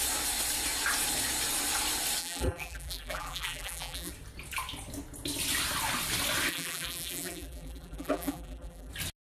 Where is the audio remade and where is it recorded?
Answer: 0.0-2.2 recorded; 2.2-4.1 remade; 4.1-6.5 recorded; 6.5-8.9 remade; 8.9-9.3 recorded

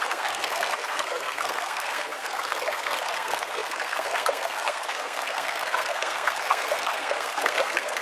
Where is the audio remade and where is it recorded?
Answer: 0.0-8.0 remade

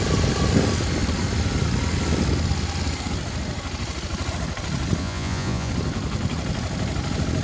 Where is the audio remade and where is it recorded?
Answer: 0.0-5.0 recorded; 5.0-5.7 remade; 5.7-7.4 recorded

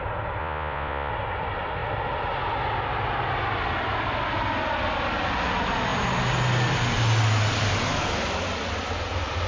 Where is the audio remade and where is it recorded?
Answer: 0.0-0.4 recorded; 0.4-1.1 remade; 1.1-9.5 recorded

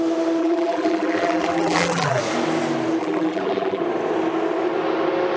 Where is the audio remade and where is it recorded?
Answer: 0.0-0.4 recorded; 0.4-2.2 remade; 2.2-3.0 recorded; 3.0-3.8 remade; 3.8-5.4 recorded

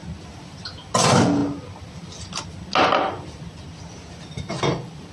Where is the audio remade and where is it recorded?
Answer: 0.0-5.1 recorded

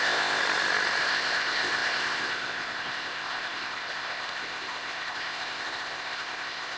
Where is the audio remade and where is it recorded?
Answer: 0.0-0.4 remade; 0.4-1.0 recorded; 1.0-6.8 remade

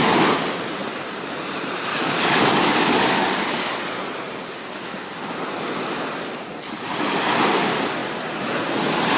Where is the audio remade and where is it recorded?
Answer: 0.0-1.9 recorded; 1.9-3.8 remade; 3.8-9.2 recorded